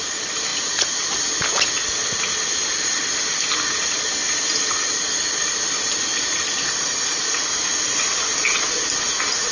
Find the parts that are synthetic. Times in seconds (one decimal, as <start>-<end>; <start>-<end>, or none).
none